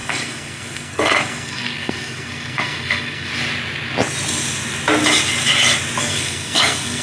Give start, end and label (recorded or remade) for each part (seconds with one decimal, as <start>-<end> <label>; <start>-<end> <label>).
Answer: 0.0-3.3 remade; 3.3-6.0 recorded; 6.0-7.0 remade